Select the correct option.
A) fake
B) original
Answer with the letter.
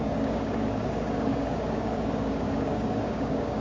A